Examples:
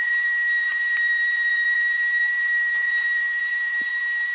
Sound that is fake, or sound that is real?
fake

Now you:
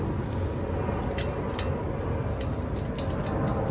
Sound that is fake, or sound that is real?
real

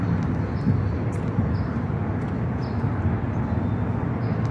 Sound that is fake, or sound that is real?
real